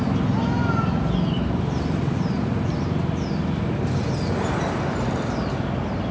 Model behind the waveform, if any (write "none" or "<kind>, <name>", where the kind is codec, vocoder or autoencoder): none